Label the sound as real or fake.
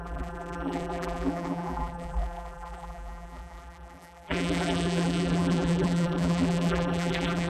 fake